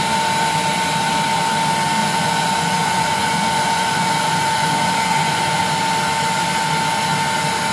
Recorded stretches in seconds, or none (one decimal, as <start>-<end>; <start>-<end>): 0.0-2.0; 5.6-7.7